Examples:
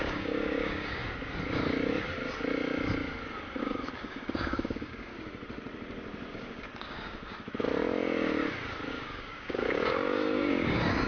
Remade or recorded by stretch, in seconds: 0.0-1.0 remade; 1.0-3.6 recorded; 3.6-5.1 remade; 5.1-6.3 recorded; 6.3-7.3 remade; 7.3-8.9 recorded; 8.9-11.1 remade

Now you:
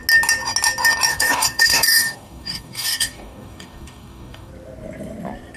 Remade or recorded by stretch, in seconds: 0.0-1.1 recorded; 1.1-4.5 remade; 4.5-5.6 recorded

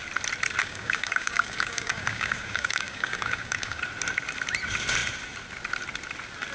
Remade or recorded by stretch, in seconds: 0.0-0.6 recorded; 0.6-3.8 remade; 3.8-6.5 recorded

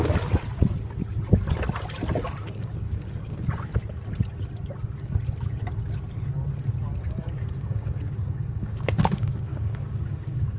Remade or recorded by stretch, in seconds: 0.0-2.4 recorded; 2.4-3.5 remade; 3.5-7.0 recorded; 7.0-10.6 remade

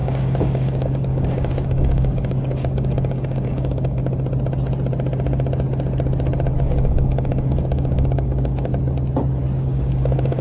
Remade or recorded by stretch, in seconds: 0.0-4.0 remade; 4.0-6.6 recorded; 6.6-8.7 remade; 8.7-9.6 recorded; 9.6-10.4 remade